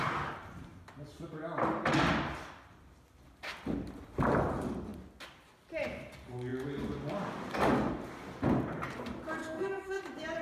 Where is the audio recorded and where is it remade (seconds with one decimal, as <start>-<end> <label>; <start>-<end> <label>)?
0.0-9.4 recorded; 9.4-10.0 remade; 10.0-10.4 recorded